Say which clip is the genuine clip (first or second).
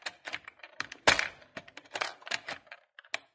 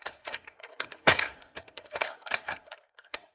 first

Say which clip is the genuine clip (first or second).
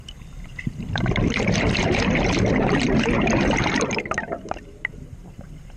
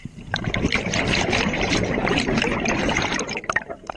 first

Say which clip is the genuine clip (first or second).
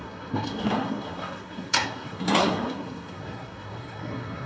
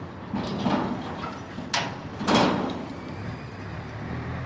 second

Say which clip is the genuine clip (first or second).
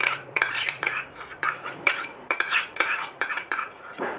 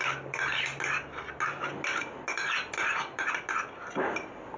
second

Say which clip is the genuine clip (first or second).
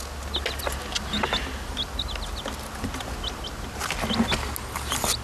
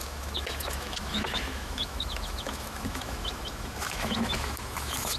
first